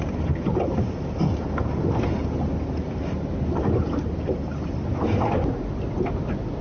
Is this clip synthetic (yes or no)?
no